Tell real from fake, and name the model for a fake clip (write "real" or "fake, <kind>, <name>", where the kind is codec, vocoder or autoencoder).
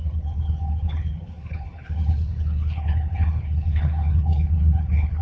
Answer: fake, codec, HILCodec